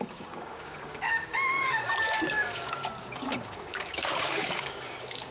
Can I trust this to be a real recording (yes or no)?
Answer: no